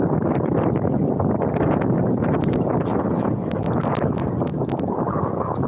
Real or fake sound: real